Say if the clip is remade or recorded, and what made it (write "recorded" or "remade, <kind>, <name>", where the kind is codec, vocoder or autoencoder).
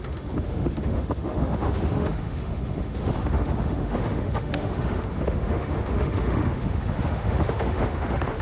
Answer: remade, autoencoder, DAC-VAE